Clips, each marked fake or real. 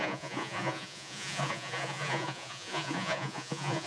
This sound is fake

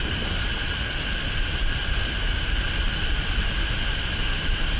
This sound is real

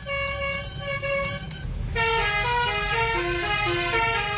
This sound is real